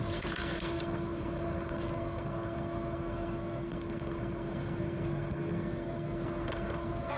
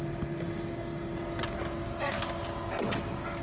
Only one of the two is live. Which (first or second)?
second